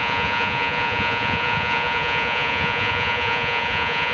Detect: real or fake fake